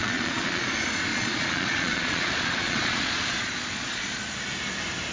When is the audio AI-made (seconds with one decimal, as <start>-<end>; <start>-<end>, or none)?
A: 0.0-0.7; 1.1-4.2